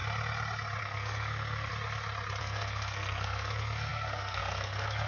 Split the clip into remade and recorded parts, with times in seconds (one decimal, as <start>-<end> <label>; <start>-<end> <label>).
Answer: 0.0-0.8 recorded; 0.8-1.7 remade; 1.7-2.4 recorded; 2.4-5.1 remade